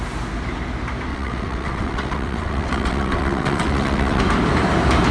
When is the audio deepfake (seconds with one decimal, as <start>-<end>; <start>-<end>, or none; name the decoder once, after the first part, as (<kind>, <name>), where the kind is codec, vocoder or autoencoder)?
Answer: 1.1-4.2 (vocoder, WaveNeXt)